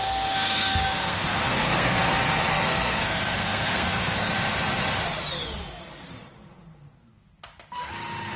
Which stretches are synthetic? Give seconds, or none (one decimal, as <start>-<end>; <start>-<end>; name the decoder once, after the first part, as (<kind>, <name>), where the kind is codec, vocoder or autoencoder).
0.0-2.0 (codec, SNAC); 2.5-4.3